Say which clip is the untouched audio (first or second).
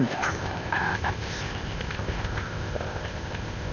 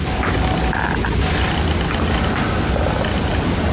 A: second